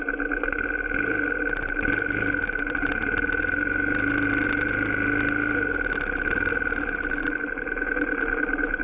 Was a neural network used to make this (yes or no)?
no